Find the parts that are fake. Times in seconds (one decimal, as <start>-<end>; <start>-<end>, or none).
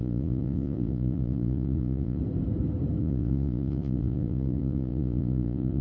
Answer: 0.0-2.2; 3.0-5.8